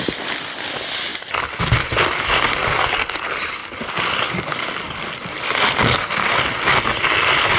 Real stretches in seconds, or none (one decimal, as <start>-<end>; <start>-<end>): 0.0-3.6; 5.0-7.6